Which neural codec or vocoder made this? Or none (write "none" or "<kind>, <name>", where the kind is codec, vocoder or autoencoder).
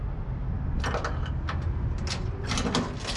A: none